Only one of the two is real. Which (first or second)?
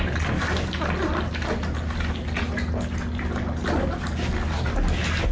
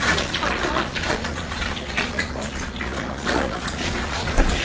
first